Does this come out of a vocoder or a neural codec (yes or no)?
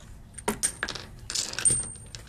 no